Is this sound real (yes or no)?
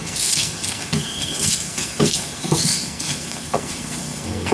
no